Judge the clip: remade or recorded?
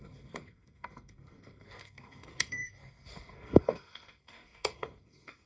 remade